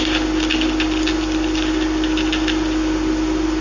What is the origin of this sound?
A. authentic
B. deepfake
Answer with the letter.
A